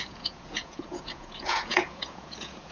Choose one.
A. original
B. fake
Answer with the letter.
B